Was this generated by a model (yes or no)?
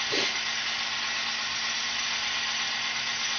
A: no